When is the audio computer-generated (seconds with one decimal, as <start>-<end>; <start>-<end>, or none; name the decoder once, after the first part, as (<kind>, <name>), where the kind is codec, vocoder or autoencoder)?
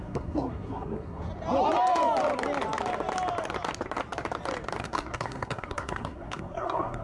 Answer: 0.0-1.3 (codec, SNAC); 4.8-7.0